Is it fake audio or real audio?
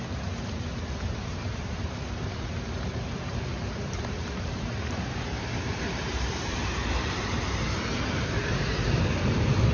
fake